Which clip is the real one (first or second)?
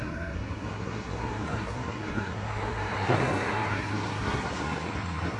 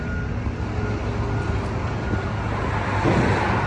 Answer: second